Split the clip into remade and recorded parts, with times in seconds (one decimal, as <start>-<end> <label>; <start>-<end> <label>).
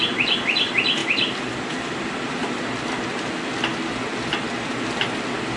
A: 0.0-5.6 recorded